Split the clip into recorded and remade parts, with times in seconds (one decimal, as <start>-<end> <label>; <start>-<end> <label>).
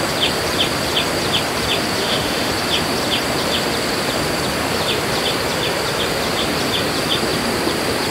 0.0-2.0 recorded; 2.0-2.5 remade; 2.5-8.1 recorded